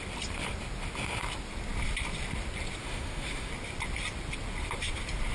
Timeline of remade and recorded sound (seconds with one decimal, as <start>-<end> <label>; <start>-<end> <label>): 0.0-2.8 recorded; 2.8-3.5 remade; 3.5-5.3 recorded